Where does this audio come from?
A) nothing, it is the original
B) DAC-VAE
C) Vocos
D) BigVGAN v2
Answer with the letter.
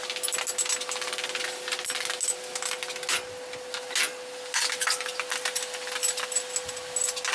A